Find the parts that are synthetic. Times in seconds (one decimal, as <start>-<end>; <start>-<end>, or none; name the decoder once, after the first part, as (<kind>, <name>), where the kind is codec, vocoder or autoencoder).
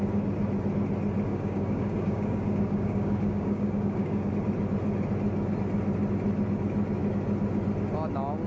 1.3-4.3 (codec, DAC)